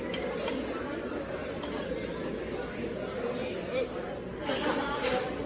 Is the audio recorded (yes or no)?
yes